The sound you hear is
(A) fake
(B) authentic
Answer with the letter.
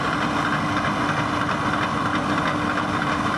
B